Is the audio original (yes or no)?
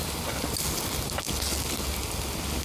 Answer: yes